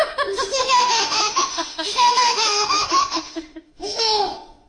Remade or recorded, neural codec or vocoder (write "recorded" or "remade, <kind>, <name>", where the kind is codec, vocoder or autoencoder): remade, autoencoder, DAC-VAE